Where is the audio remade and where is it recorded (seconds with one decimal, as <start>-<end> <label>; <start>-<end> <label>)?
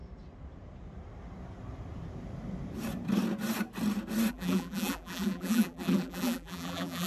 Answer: 0.0-4.3 recorded; 4.3-7.1 remade